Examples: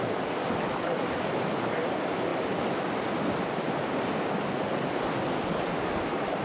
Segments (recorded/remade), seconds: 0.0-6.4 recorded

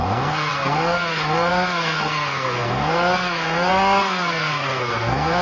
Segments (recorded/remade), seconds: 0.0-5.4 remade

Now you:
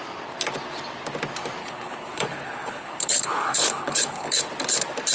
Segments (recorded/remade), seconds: 0.0-1.6 recorded; 1.6-4.4 remade; 4.4-5.1 recorded

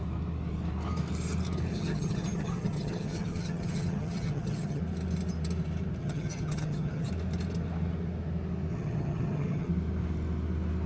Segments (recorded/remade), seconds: 0.0-1.7 recorded; 1.7-4.8 remade; 4.8-6.0 recorded; 6.0-7.1 remade; 7.1-8.7 recorded; 8.7-9.7 remade; 9.7-10.9 recorded

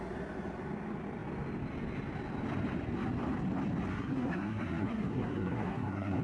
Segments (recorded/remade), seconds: 0.0-3.9 recorded; 3.9-6.2 remade

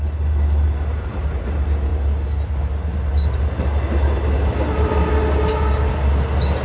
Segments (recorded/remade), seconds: 0.0-6.6 recorded

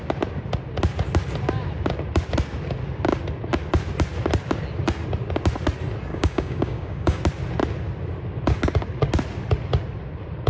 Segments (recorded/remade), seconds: 0.0-6.1 recorded; 6.1-7.2 remade; 7.2-10.5 recorded